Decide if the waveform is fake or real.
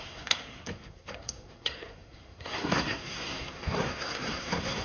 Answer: fake